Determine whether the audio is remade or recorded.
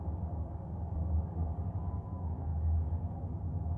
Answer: remade